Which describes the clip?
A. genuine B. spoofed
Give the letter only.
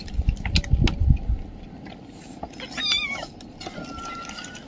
A